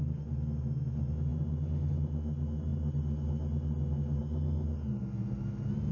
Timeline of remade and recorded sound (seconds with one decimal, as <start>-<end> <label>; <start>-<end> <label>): 0.0-5.9 recorded